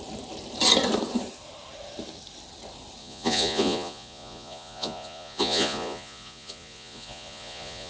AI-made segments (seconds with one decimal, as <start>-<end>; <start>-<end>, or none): 3.0-7.9